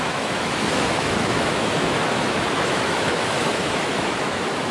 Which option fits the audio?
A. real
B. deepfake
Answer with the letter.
B